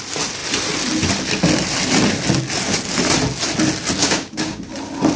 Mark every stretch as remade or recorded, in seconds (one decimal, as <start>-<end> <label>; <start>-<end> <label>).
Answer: 0.0-4.0 recorded; 4.0-4.6 remade; 4.6-5.2 recorded